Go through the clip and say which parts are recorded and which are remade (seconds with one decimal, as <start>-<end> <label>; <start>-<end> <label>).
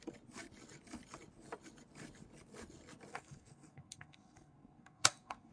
0.0-3.1 recorded; 3.1-5.5 remade